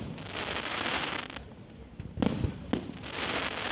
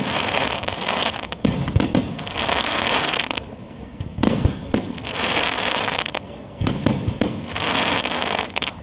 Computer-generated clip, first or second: second